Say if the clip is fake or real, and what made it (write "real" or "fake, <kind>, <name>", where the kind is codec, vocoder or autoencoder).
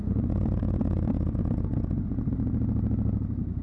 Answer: real